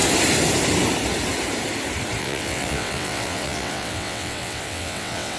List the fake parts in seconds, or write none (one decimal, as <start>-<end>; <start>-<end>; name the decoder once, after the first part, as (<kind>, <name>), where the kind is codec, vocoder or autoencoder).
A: 2.2-5.4 (vocoder, WaveNeXt)